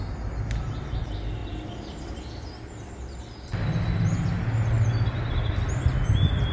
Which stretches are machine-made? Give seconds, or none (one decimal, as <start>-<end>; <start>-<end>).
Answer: 1.4-3.2